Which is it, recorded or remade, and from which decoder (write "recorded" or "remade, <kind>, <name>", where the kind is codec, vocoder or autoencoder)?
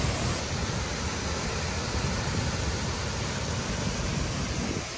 recorded